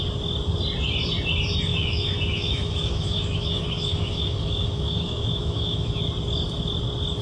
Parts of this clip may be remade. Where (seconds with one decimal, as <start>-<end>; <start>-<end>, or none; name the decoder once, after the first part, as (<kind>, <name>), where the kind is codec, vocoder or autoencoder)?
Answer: 1.7-6.0 (autoencoder, DAC-VAE)

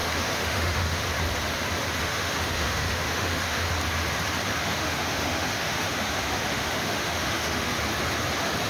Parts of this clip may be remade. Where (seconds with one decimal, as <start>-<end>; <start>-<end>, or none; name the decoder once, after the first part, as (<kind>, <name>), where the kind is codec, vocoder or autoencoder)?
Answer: 0.0-1.0 (autoencoder, DAC-VAE); 2.0-3.7; 4.5-7.7

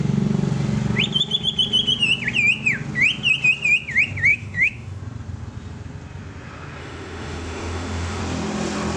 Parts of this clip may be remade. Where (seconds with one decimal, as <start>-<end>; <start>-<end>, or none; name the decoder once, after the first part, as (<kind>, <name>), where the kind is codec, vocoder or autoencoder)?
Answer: 4.3-5.0 (autoencoder, DAC-VAE); 6.8-8.2

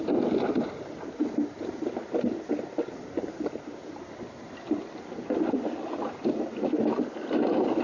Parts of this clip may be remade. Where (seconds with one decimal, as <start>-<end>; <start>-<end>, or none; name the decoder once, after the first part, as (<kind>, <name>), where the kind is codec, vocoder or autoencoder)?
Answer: none

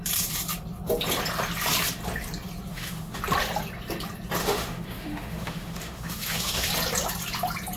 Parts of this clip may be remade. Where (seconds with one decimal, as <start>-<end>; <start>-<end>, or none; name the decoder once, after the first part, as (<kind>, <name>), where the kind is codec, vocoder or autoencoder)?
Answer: 2.7-3.2 (autoencoder, DAC-VAE); 4.4-6.7